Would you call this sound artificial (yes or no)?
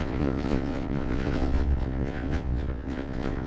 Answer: yes